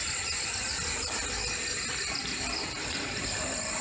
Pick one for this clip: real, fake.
real